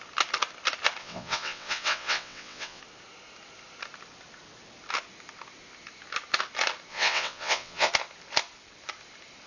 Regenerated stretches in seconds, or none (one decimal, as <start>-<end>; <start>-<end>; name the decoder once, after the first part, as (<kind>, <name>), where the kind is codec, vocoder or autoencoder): 1.0-2.8 (vocoder, WaveNeXt); 6.9-7.9